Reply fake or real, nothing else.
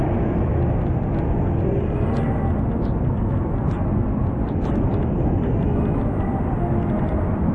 real